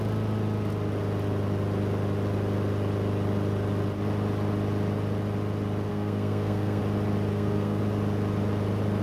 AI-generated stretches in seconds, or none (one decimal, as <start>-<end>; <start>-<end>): 5.9-6.8; 7.3-7.8